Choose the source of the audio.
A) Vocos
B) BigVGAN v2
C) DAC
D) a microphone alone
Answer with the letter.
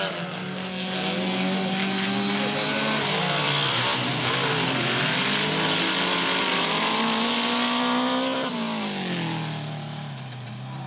D